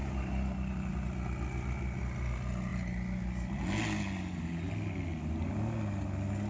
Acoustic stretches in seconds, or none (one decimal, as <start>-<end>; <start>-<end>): 0.0-6.5